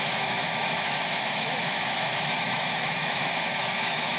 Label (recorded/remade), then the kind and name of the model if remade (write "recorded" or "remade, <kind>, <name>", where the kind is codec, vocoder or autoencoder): remade, autoencoder, DAC-VAE